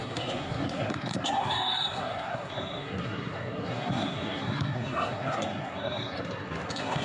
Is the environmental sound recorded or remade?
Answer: remade